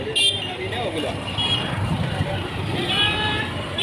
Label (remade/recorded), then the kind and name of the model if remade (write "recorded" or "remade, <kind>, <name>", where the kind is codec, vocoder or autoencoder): recorded